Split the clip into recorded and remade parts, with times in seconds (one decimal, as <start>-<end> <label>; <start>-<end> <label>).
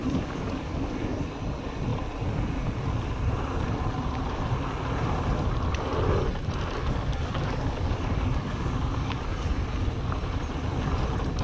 0.0-1.2 remade; 1.2-6.8 recorded; 6.8-9.2 remade; 9.2-11.4 recorded